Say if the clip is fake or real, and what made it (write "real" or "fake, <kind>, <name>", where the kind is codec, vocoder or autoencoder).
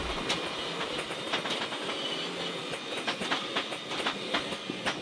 real